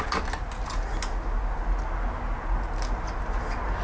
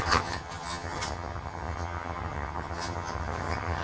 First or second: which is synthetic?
second